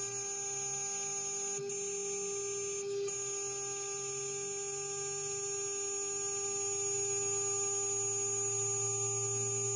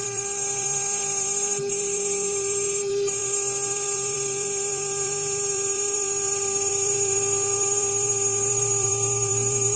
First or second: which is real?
first